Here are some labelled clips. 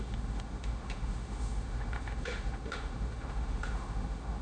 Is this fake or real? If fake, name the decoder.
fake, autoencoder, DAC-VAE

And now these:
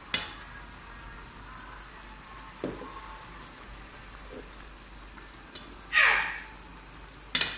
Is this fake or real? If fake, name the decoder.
real